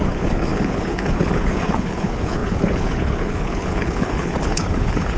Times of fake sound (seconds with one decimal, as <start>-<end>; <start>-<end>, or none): 0.0-5.2

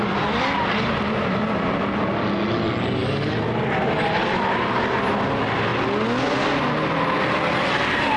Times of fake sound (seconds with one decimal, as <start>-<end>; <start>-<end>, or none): none

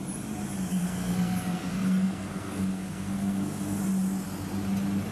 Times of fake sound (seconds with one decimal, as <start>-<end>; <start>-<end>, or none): 0.7-3.8

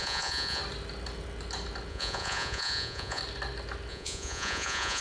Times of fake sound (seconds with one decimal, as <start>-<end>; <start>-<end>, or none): 0.0-0.6; 1.9-3.2; 3.9-5.0

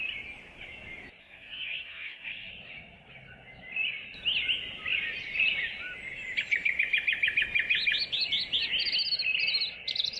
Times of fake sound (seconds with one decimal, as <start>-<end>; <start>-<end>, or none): 1.2-2.5

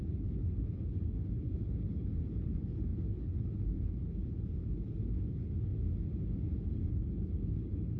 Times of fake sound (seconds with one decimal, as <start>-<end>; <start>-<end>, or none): 0.0-5.7; 6.9-8.0